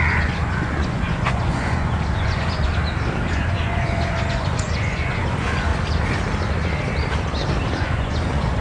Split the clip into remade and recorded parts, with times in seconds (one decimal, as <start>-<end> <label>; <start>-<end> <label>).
0.0-2.7 remade; 2.7-3.3 recorded; 3.3-5.7 remade; 5.7-7.8 recorded; 7.8-8.6 remade